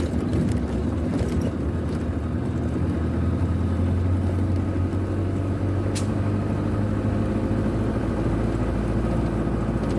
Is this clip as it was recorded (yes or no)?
yes